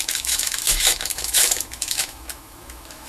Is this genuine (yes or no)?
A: no